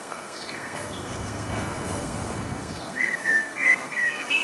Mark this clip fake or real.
fake